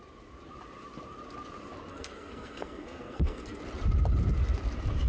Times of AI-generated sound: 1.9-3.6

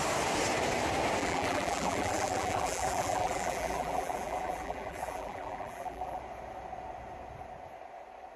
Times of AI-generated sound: 1.2-6.2

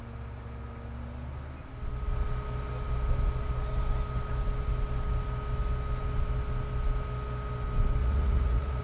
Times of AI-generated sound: 8.0-8.8

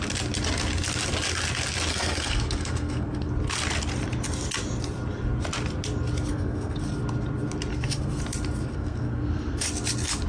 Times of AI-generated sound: 1.9-3.3; 6.3-6.8; 7.7-8.2; 8.7-9.6